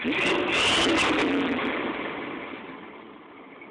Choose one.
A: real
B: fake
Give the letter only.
A